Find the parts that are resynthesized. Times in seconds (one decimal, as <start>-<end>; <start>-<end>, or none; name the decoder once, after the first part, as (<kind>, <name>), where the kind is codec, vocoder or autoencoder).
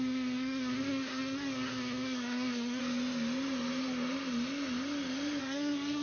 0.0-2.8 (codec, SNAC); 5.4-6.0